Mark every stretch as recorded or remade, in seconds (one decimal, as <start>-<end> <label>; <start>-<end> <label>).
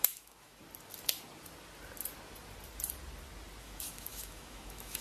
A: 0.0-0.6 remade; 0.6-3.6 recorded; 3.6-5.0 remade